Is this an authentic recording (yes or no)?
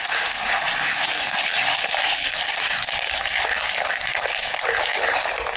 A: yes